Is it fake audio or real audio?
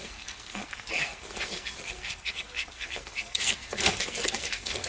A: fake